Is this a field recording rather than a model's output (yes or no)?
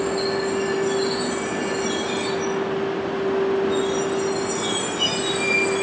yes